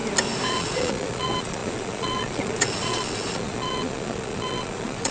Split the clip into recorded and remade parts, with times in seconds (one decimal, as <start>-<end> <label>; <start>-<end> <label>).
0.0-0.5 recorded; 0.5-5.1 remade